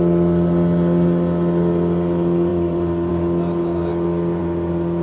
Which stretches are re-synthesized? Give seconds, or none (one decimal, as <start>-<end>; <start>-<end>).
2.5-3.1